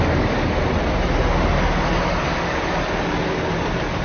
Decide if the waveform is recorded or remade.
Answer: recorded